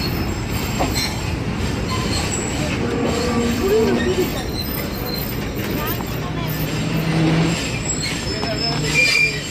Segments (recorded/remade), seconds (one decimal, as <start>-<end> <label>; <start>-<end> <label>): 0.0-9.5 recorded